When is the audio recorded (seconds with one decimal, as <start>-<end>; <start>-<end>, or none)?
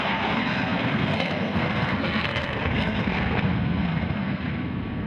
none